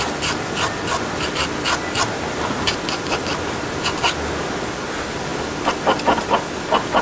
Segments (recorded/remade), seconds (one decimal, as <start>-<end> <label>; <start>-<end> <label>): 0.0-7.0 recorded